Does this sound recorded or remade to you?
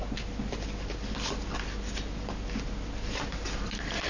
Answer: recorded